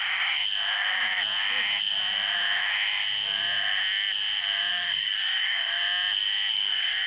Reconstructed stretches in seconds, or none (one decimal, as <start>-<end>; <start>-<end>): 0.0-0.4; 4.7-5.8; 6.5-7.1